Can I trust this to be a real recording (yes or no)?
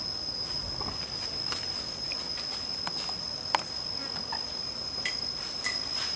yes